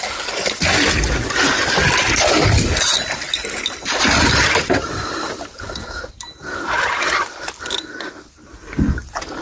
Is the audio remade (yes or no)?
no